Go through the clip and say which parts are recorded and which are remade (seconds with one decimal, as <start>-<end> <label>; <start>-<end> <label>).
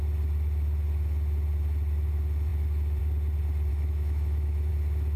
0.0-3.7 recorded; 3.7-4.7 remade; 4.7-5.2 recorded